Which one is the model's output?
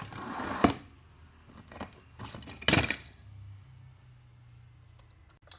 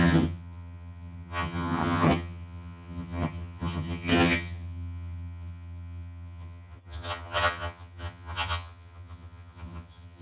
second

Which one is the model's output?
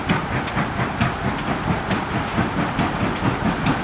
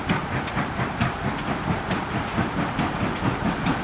second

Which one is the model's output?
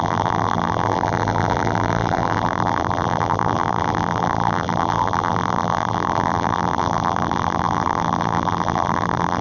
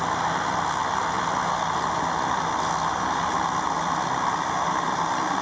first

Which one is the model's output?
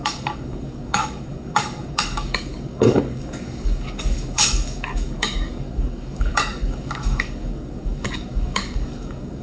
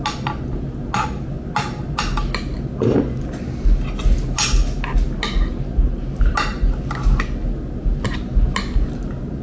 first